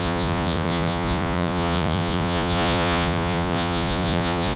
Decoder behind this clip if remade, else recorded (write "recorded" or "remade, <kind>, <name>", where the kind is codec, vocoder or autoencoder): remade, vocoder, Vocos